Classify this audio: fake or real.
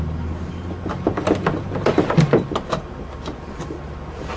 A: real